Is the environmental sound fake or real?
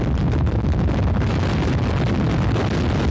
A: real